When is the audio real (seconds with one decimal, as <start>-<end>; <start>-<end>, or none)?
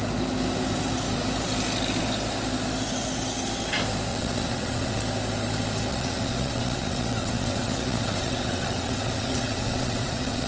0.0-4.1; 5.0-5.9